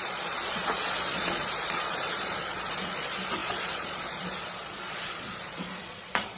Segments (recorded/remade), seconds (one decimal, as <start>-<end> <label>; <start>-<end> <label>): 0.0-6.4 remade